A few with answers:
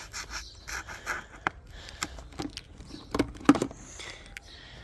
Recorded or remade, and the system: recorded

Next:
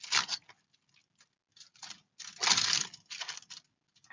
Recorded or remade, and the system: recorded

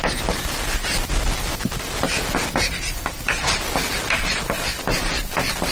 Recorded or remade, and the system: recorded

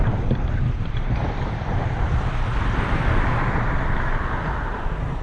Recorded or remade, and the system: remade, vocoder, BigVGAN v2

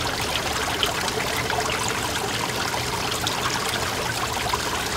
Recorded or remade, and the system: recorded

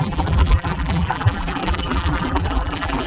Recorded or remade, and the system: remade, vocoder, BigVGAN v2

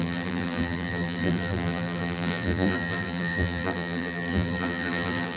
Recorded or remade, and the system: remade, vocoder, BigVGAN v2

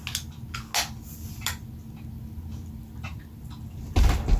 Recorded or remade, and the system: recorded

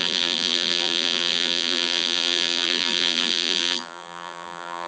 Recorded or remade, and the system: remade, vocoder, BigVGAN v2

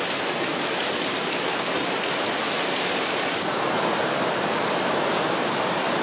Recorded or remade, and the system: recorded